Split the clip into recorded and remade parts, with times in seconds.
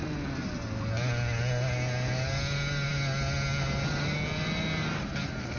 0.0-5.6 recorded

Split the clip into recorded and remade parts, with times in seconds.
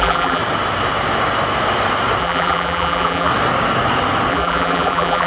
0.0-0.4 remade; 0.4-2.2 recorded; 2.2-3.3 remade; 3.3-4.3 recorded; 4.3-5.3 remade